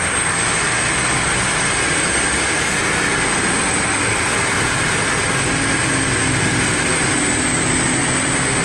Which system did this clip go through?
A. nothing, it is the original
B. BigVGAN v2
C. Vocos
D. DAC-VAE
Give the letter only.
A